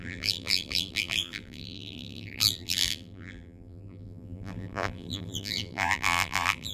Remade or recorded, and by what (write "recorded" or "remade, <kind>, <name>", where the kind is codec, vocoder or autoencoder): remade, vocoder, BigVGAN v2